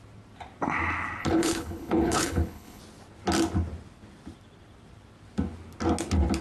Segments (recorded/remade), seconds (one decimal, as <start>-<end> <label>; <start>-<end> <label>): 0.0-1.2 recorded; 1.2-2.8 remade; 2.8-6.4 recorded